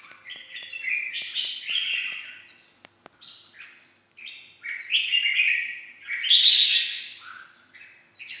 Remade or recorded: recorded